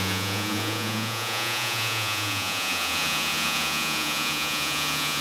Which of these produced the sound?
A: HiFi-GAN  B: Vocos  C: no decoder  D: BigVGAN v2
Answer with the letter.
B